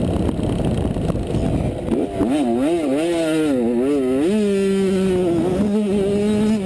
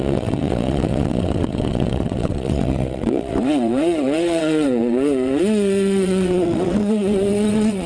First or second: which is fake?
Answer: second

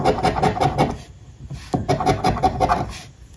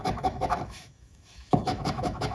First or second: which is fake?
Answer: second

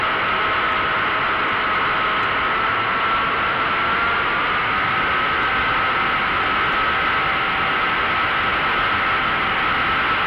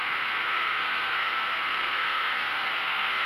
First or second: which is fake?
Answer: second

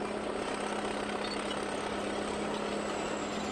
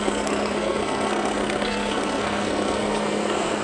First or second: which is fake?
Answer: second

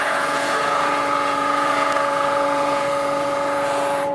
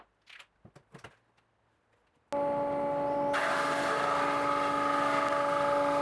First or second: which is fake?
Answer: first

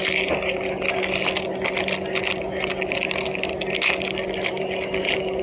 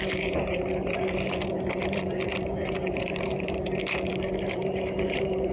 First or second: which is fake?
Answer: second